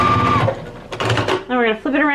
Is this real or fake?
real